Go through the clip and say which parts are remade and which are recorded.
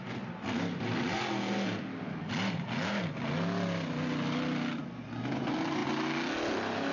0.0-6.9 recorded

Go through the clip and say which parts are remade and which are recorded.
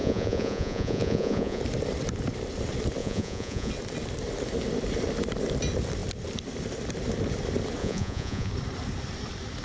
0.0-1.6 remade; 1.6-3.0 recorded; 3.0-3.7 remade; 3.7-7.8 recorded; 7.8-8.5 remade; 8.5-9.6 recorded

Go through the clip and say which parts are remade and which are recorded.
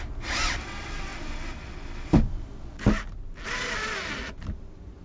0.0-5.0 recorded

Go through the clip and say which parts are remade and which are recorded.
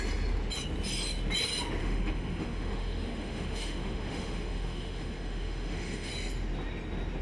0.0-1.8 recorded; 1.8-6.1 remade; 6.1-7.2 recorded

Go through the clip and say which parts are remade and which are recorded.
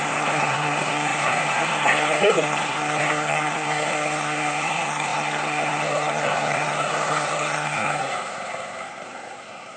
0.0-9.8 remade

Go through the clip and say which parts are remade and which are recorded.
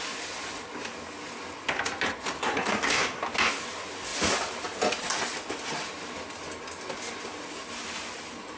0.0-2.4 recorded; 2.4-3.2 remade; 3.2-8.6 recorded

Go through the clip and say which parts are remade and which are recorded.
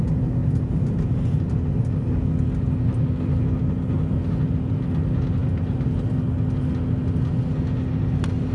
0.0-8.5 recorded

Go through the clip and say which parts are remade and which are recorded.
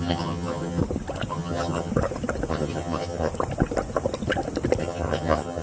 0.0-0.8 remade; 0.8-1.3 recorded; 1.3-1.9 remade; 1.9-2.5 recorded; 2.5-3.3 remade; 3.3-4.8 recorded; 4.8-5.6 remade